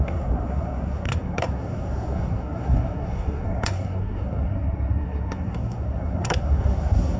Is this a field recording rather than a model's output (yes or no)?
no